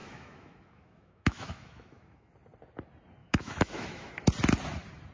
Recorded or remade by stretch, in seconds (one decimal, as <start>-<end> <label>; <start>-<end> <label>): 0.0-2.3 remade; 2.3-3.2 recorded; 3.2-4.1 remade; 4.1-5.1 recorded